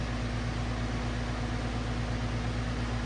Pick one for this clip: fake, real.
real